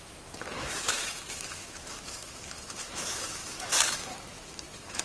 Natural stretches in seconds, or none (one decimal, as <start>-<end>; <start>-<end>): none